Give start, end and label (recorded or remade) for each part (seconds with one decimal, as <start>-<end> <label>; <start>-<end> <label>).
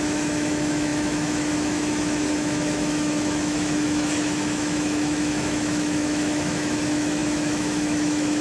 0.0-8.4 remade